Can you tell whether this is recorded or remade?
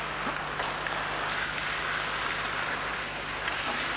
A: recorded